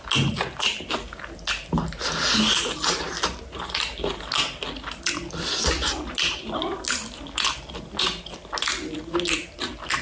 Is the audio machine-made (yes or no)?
no